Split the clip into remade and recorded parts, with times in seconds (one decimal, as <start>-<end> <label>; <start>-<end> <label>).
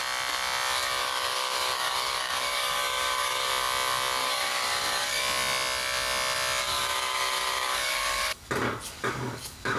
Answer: 0.0-1.0 recorded; 1.0-3.5 remade; 3.5-4.2 recorded; 4.2-5.2 remade; 5.2-6.6 recorded; 6.6-9.8 remade